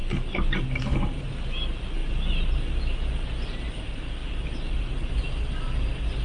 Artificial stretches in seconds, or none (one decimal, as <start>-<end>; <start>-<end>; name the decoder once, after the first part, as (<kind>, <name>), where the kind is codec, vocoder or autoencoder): none